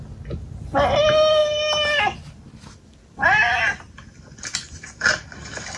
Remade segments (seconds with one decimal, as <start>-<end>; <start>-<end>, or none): 3.4-5.8

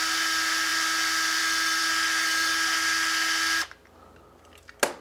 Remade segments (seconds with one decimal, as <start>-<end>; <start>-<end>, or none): none

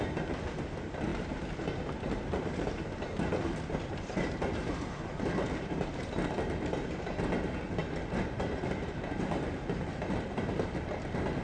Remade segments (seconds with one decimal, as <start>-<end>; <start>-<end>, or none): 1.1-6.1; 7.8-10.9

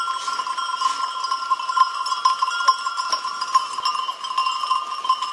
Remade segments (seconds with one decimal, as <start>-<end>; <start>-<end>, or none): none

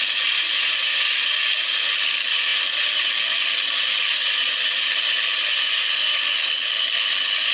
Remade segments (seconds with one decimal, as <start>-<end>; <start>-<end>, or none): none

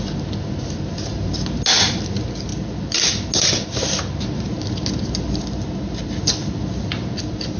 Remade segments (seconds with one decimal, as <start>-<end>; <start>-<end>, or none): none

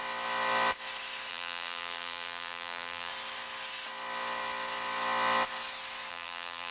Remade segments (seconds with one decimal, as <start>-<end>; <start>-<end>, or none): 1.3-3.1; 6.1-6.7

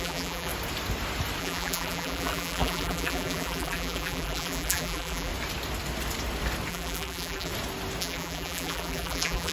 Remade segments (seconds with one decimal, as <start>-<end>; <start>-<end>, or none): 0.0-0.5; 1.4-5.3; 6.7-7.5; 8.0-9.5